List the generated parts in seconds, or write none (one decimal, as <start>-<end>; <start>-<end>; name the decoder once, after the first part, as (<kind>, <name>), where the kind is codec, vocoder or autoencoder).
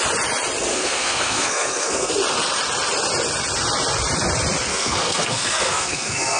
0.7-2.1 (codec, SNAC); 4.7-6.4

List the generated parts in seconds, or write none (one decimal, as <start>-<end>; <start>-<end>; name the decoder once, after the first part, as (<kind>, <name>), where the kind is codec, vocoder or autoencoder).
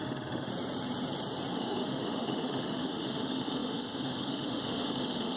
0.0-0.5 (autoencoder, DAC-VAE); 1.5-5.4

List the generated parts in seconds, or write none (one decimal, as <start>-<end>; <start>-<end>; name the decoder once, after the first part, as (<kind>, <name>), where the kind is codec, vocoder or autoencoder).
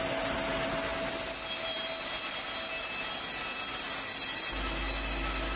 none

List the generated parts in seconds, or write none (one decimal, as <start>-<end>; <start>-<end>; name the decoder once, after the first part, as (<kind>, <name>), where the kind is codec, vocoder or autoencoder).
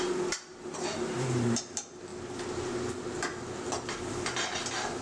none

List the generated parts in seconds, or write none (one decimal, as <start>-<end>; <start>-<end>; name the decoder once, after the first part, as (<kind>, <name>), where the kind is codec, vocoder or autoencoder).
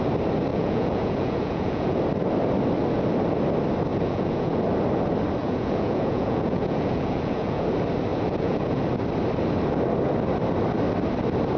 0.5-2.0 (vocoder, Vocos); 3.9-4.6; 5.4-7.7; 8.1-8.8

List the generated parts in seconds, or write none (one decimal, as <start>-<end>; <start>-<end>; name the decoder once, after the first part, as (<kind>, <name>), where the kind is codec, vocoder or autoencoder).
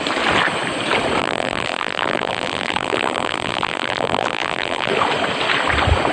1.2-4.9 (vocoder, BigVGAN v2)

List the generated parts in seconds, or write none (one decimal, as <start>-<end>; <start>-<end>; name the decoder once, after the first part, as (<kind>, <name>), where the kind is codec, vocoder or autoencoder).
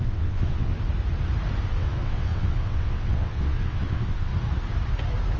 0.0-0.7 (vocoder, WaveNeXt); 1.6-4.3